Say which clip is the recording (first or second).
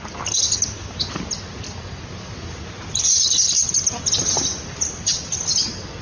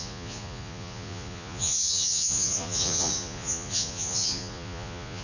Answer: first